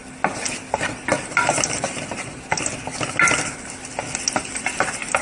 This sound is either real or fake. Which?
real